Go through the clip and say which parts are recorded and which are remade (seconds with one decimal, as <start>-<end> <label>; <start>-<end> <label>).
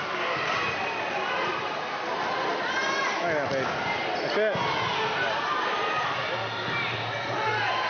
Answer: 0.0-7.9 recorded